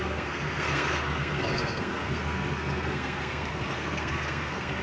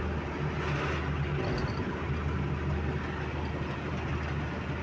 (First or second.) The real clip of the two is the second